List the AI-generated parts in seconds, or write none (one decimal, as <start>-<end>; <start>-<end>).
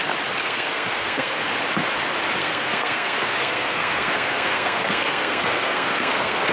0.4-1.4; 2.4-6.5